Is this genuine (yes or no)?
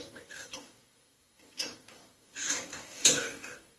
no